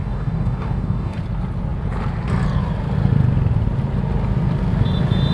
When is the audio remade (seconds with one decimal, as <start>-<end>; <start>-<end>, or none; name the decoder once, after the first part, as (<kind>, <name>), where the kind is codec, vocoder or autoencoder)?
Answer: 0.0-1.2 (codec, DAC)